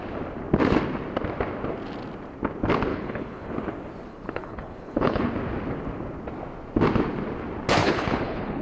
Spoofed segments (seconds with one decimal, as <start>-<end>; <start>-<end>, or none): 2.9-3.5; 4.1-5.3; 7.8-8.6